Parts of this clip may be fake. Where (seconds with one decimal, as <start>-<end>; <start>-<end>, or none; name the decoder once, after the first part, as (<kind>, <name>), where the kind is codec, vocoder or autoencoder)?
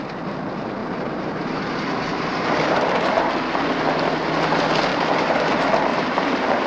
0.8-3.3 (vocoder, BigVGAN v2); 4.9-5.5; 5.9-6.7